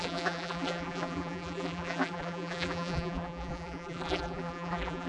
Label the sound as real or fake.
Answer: fake